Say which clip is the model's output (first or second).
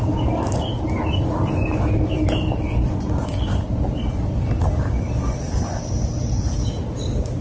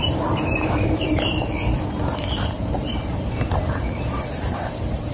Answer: second